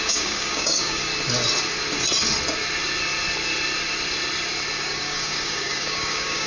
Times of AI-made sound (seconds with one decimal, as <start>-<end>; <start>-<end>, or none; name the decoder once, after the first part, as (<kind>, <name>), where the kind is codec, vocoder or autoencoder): 0.0-1.1 (codec, DAC); 4.8-6.5